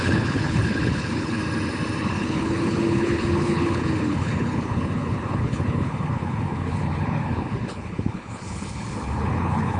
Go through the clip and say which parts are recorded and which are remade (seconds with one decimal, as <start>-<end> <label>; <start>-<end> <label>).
0.0-1.4 remade; 1.4-2.0 recorded; 2.0-9.8 remade